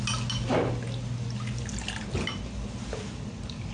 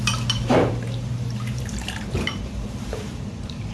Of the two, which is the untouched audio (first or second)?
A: first